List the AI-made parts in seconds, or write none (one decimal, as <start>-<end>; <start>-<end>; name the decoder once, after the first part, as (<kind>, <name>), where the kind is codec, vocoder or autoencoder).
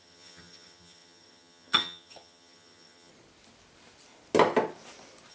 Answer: 0.0-3.1 (vocoder, HiFi-GAN)